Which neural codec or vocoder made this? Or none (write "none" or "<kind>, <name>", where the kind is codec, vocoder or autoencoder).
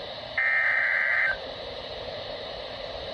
vocoder, BigVGAN v2